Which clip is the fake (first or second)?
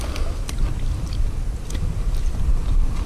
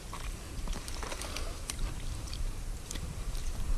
second